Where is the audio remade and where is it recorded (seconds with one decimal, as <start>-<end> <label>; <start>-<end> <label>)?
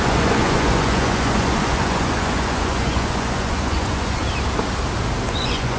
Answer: 0.0-4.2 remade; 4.2-5.3 recorded; 5.3-5.8 remade